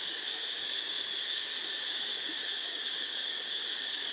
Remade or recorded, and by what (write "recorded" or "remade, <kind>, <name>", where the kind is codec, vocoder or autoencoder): remade, codec, DAC